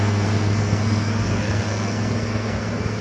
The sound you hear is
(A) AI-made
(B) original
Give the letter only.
A